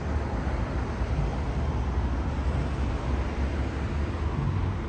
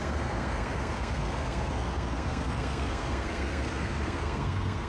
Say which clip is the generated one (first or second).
second